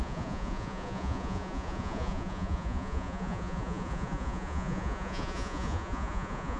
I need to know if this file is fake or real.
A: fake